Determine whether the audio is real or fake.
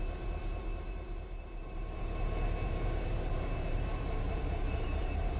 fake